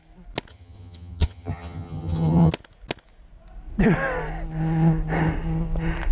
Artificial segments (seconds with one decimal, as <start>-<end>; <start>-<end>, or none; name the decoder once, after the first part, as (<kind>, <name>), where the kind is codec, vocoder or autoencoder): 0.5-2.5 (vocoder, HiFi-GAN)